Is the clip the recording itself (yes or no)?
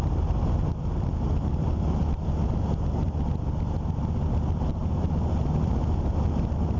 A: yes